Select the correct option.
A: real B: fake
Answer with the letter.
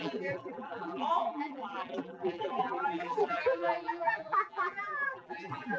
B